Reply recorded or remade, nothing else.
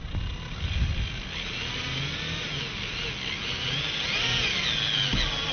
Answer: recorded